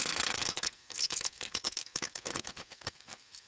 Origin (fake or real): fake